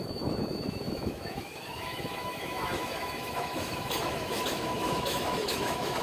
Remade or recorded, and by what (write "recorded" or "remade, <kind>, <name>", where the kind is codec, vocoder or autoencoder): remade, autoencoder, DAC-VAE